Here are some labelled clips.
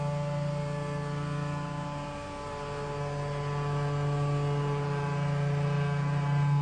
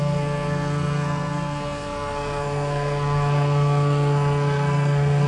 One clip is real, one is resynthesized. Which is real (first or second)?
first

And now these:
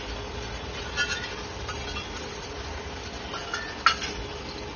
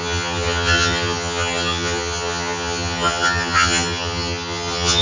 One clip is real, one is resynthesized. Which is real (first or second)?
first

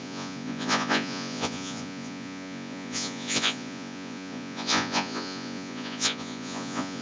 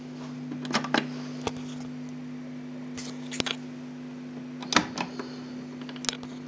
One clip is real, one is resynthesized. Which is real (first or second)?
second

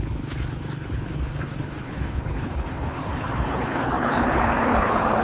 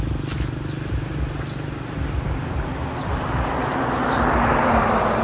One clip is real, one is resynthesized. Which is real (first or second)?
second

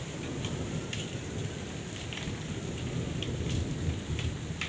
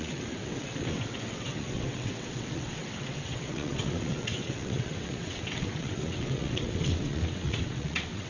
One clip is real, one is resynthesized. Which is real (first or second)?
first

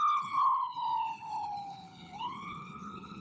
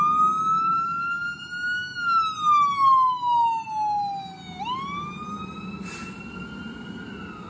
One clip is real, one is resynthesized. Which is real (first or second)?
second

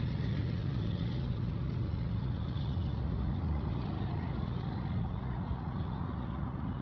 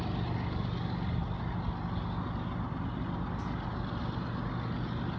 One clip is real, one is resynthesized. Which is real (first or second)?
second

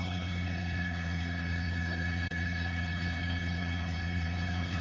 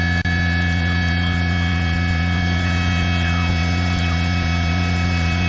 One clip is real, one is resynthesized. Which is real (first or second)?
second